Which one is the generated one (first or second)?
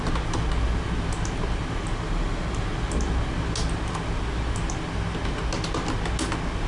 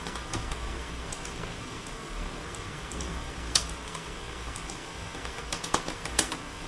second